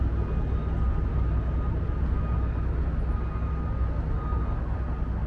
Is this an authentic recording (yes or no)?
yes